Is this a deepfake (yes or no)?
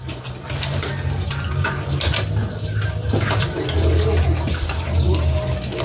no